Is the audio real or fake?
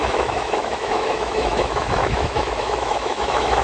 fake